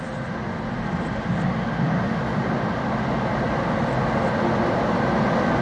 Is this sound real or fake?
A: real